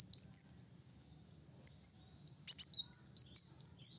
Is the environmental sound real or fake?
real